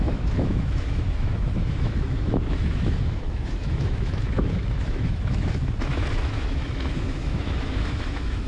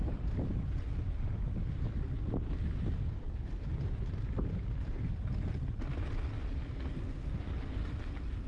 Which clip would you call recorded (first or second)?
second